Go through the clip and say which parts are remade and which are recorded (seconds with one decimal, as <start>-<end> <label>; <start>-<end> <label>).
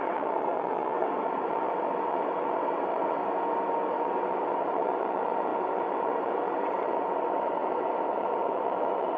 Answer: 0.0-3.2 remade; 3.2-3.9 recorded; 3.9-9.2 remade